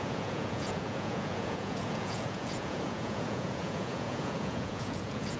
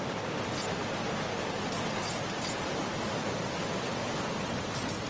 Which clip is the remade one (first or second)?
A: first